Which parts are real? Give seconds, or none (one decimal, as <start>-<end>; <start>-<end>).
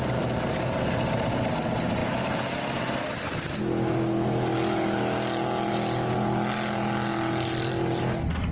0.0-8.5